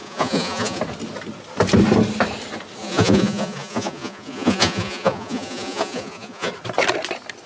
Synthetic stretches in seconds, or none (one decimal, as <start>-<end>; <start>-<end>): 0.0-0.8; 2.8-6.5

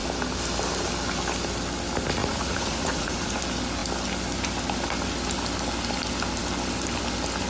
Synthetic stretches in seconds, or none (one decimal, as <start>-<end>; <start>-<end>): 2.2-3.4

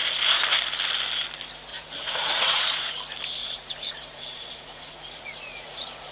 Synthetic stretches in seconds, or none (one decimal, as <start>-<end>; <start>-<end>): 1.7-2.9; 3.4-6.1

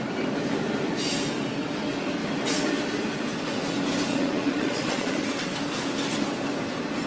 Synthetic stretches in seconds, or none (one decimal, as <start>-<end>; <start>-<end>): 4.1-5.2